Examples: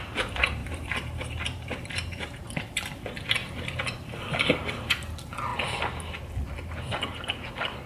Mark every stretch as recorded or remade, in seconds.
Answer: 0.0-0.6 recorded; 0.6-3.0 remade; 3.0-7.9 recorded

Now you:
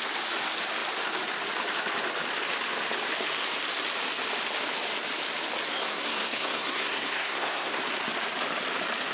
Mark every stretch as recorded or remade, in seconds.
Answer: 0.0-5.7 recorded; 5.7-7.8 remade; 7.8-9.1 recorded

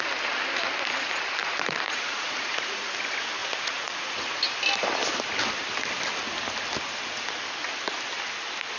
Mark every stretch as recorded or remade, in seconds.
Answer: 0.0-1.4 recorded; 1.4-2.9 remade; 2.9-3.4 recorded; 3.4-4.4 remade; 4.4-8.8 recorded

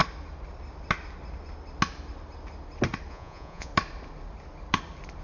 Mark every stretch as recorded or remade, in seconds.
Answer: 0.0-3.1 recorded; 3.1-3.7 remade; 3.7-5.2 recorded

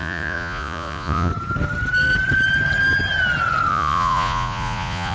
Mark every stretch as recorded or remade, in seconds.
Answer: 0.0-1.3 remade; 1.3-3.7 recorded; 3.7-5.1 remade

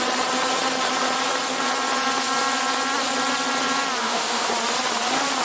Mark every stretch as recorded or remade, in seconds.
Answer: 0.0-4.0 recorded; 4.0-4.5 remade; 4.5-5.4 recorded

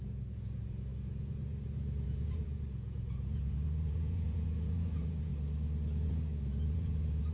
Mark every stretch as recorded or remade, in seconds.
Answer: 0.0-5.3 remade; 5.3-6.1 recorded; 6.1-7.3 remade

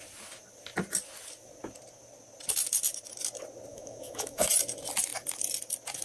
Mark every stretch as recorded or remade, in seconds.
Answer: 0.0-3.7 recorded; 3.7-4.5 remade; 4.5-6.0 recorded